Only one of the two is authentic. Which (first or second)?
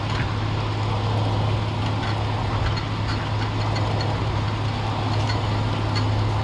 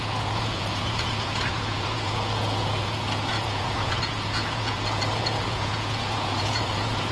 first